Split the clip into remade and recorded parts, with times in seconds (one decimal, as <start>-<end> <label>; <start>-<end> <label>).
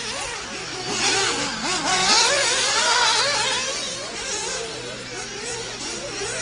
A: 0.0-1.7 recorded; 1.7-3.2 remade; 3.2-3.7 recorded; 3.7-4.4 remade; 4.4-5.5 recorded; 5.5-6.4 remade